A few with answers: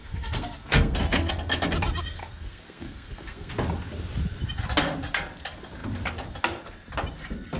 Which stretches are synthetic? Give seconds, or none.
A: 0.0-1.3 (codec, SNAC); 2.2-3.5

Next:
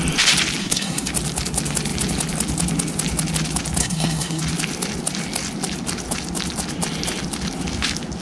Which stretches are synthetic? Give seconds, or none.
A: 0.6-1.1 (codec, SNAC); 3.8-4.4

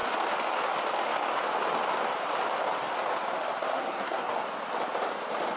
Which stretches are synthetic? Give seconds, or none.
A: 3.7-4.3 (codec, SNAC)

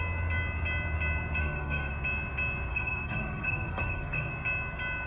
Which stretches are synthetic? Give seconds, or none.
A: 1.4-1.9 (codec, SNAC); 2.7-4.3

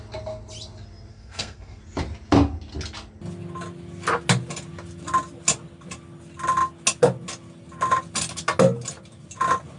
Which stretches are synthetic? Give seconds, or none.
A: 1.1-1.8 (codec, SNAC)

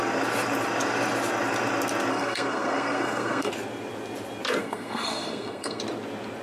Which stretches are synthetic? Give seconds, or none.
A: 2.1-3.5 (codec, SNAC); 4.6-5.8